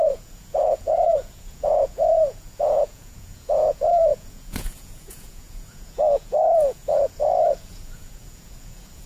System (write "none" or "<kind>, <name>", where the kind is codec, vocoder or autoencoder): vocoder, Vocos